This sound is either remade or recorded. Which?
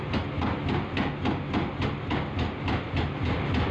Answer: recorded